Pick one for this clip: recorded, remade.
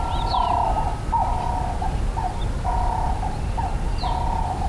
recorded